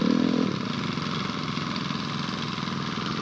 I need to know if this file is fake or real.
real